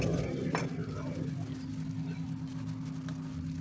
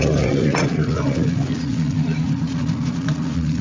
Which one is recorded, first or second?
first